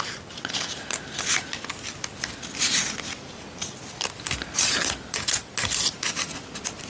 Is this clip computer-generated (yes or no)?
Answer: no